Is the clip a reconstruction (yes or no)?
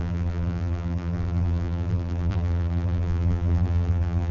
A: yes